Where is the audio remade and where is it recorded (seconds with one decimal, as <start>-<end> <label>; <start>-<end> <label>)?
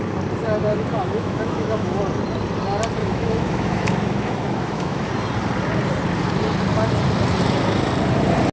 0.0-0.7 recorded; 0.7-2.0 remade; 2.0-3.0 recorded; 3.0-5.1 remade; 5.1-8.5 recorded